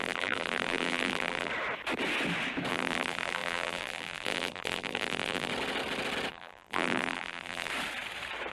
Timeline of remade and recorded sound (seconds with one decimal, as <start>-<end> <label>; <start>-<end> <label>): 0.0-1.5 remade; 1.5-2.7 recorded; 2.7-5.5 remade; 5.5-6.3 recorded; 6.3-7.7 remade; 7.7-8.5 recorded